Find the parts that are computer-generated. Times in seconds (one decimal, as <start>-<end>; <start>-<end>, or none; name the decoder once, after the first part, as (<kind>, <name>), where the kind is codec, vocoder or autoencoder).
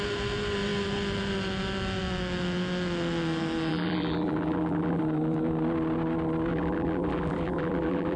3.7-5.0 (vocoder, BigVGAN v2); 6.5-8.2